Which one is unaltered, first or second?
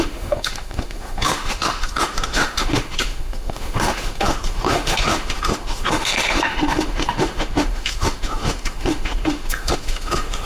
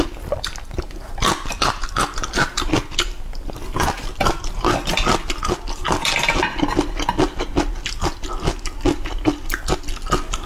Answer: second